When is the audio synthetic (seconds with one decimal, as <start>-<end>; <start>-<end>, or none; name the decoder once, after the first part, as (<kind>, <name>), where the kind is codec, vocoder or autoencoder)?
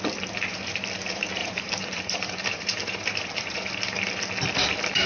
1.4-3.7 (vocoder, BigVGAN v2)